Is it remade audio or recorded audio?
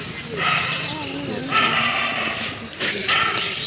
recorded